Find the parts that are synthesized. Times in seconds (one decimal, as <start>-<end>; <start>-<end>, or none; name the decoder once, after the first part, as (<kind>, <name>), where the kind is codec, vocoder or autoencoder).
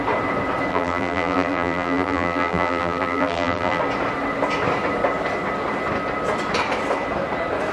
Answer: 0.7-3.8 (vocoder, BigVGAN v2)